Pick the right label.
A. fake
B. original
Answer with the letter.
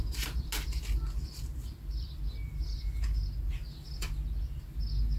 B